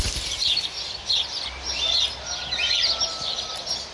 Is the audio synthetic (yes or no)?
no